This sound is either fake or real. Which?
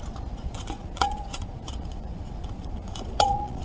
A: fake